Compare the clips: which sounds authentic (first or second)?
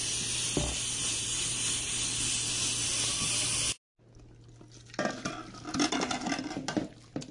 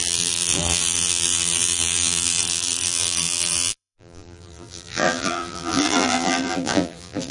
first